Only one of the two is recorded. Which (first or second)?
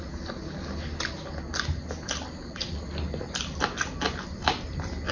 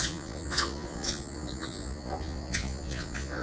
first